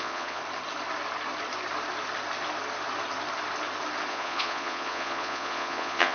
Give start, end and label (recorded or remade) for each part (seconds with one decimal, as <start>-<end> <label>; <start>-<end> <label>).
0.0-0.4 remade; 0.4-4.1 recorded; 4.1-6.1 remade